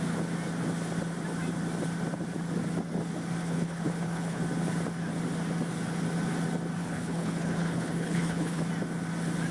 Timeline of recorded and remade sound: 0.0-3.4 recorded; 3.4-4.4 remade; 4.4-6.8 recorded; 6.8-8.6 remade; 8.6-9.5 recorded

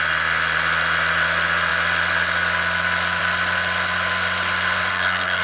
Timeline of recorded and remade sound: 0.0-4.9 recorded; 4.9-5.4 remade